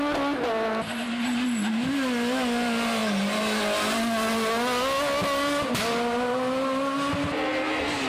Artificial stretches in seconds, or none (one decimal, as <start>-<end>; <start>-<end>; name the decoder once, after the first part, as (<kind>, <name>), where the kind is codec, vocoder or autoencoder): none